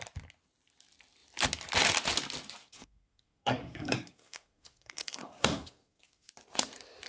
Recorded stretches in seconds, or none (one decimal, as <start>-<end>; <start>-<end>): 0.0-2.6; 6.3-7.1